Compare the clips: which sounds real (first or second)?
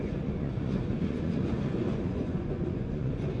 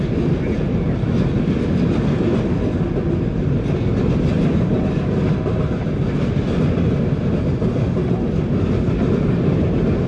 second